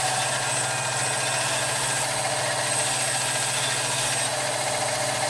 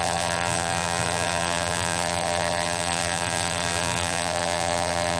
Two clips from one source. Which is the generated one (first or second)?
second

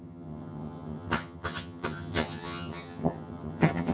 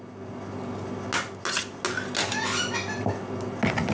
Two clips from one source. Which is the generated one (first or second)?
first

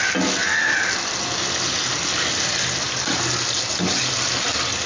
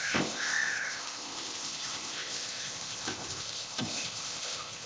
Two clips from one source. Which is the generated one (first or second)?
second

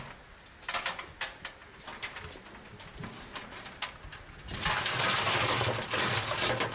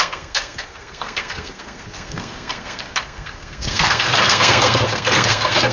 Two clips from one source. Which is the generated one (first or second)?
second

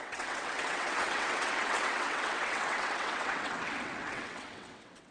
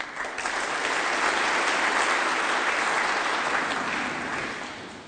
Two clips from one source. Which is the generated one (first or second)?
first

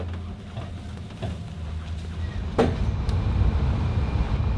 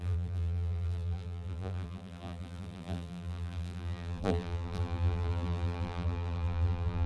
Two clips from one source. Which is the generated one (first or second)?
second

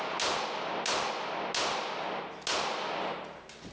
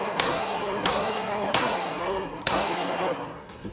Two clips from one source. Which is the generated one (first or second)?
second